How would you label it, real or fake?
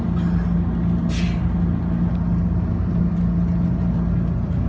real